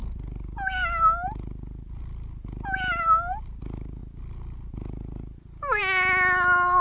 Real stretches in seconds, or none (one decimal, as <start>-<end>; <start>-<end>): 0.0-6.8